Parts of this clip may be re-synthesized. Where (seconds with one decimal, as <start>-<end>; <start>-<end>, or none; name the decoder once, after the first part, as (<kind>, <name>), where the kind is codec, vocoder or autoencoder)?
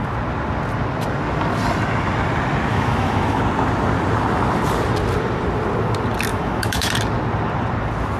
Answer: 2.7-3.4 (autoencoder, DAC-VAE); 6.3-6.9